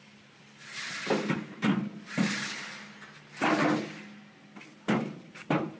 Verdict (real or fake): real